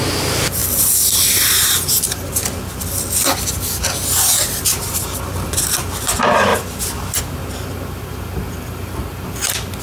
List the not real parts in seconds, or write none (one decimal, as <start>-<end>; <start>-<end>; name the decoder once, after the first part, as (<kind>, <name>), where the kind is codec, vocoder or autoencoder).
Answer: 0.0-6.5 (vocoder, BigVGAN v2); 7.2-9.8